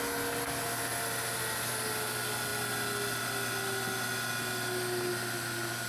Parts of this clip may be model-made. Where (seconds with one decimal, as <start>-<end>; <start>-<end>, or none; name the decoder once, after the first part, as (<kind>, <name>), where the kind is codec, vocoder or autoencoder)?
none